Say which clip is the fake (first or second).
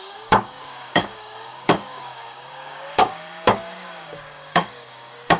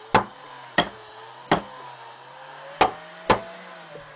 first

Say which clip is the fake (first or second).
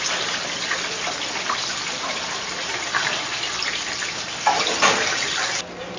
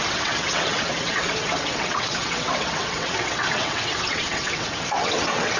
second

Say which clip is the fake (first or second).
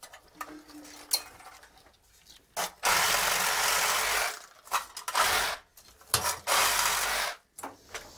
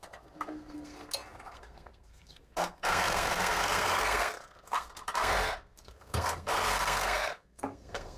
second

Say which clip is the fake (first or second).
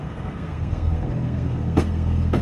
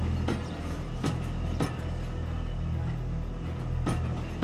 first